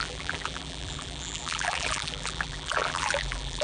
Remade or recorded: remade